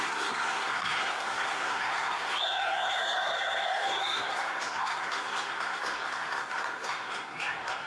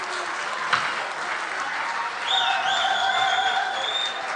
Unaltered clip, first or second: second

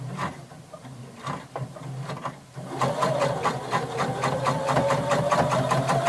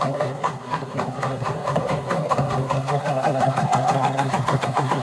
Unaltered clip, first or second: first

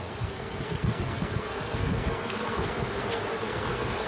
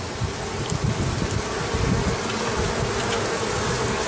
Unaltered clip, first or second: second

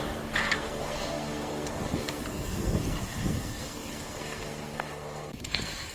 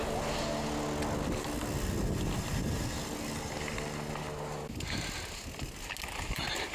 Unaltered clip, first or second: second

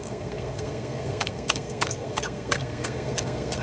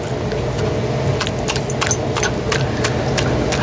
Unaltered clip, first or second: second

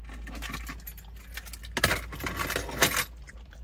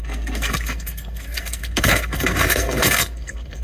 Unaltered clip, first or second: first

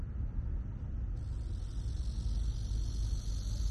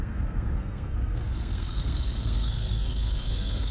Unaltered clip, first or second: first